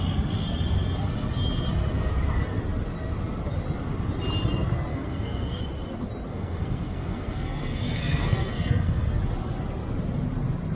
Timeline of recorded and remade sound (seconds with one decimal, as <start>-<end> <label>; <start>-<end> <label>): 0.0-4.9 recorded; 4.9-5.6 remade; 5.6-6.3 recorded; 6.3-9.2 remade; 9.2-10.7 recorded